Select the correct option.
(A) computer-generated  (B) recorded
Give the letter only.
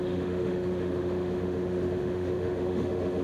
A